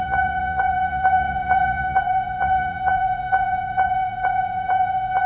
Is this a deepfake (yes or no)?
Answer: yes